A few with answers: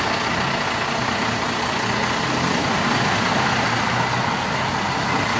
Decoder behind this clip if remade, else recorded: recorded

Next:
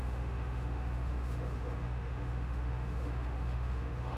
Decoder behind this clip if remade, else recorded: remade, autoencoder, DAC-VAE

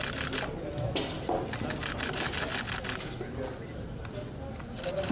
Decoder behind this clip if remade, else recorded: recorded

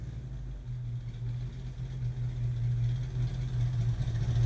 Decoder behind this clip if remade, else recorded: recorded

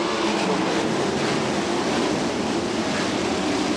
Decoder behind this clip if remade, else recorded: recorded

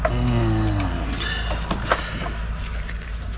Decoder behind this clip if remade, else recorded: recorded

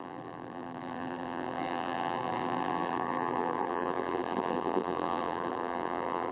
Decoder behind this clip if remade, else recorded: remade, vocoder, BigVGAN v2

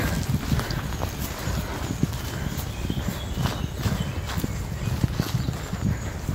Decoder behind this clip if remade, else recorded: recorded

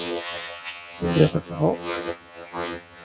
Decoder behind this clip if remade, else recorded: remade, vocoder, HiFi-GAN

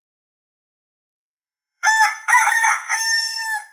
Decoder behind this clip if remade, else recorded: remade, codec, SNAC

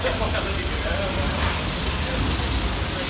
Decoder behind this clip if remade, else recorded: recorded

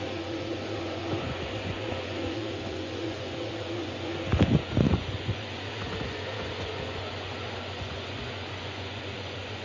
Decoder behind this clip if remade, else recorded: remade, vocoder, Vocos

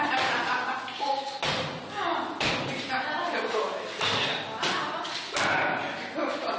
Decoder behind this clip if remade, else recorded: recorded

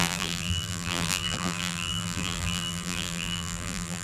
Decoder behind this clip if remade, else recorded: remade, vocoder, BigVGAN v2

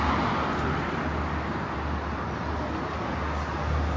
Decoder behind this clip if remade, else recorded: recorded